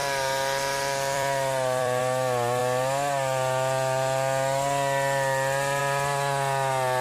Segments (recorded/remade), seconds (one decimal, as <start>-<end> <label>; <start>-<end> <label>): 0.0-2.0 remade; 2.0-7.0 recorded